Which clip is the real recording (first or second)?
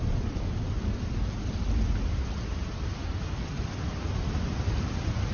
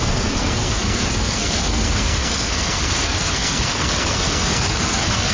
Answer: first